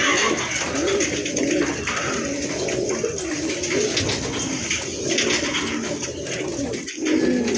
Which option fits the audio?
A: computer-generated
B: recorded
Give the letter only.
B